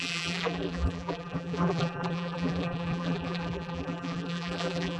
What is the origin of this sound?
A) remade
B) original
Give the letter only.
A